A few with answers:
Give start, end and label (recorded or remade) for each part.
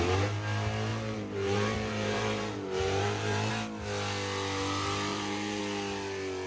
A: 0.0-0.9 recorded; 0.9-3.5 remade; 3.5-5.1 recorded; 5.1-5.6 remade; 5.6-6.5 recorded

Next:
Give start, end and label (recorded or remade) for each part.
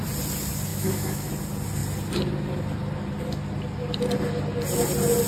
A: 0.0-0.7 recorded; 0.7-1.3 remade; 1.3-5.3 recorded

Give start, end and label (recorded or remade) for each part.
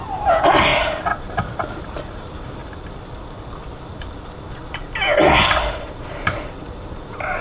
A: 0.0-0.7 remade; 0.7-1.2 recorded; 1.2-2.6 remade; 2.6-5.4 recorded; 5.4-7.4 remade